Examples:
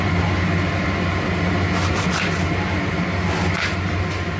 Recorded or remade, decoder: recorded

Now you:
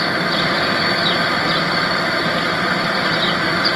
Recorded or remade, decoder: remade, vocoder, BigVGAN v2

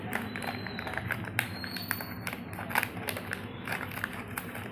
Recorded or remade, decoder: recorded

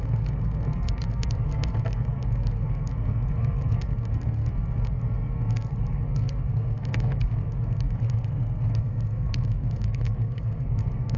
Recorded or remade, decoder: remade, codec, SNAC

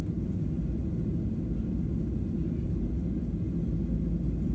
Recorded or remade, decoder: recorded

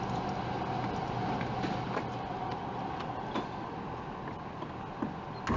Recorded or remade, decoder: recorded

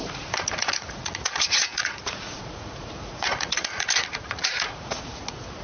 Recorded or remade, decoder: remade, vocoder, Vocos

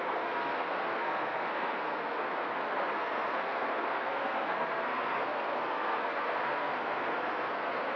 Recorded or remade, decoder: remade, codec, SNAC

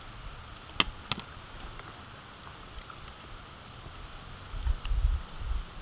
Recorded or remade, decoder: recorded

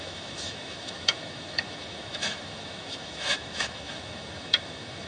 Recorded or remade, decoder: remade, autoencoder, DAC-VAE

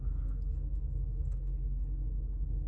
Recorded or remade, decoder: remade, codec, SNAC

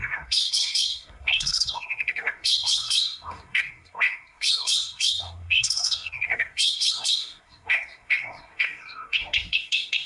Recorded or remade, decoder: remade, codec, SNAC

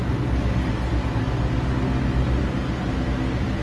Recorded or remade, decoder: recorded